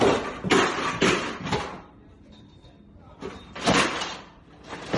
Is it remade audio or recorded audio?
remade